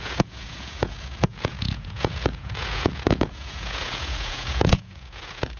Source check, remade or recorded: remade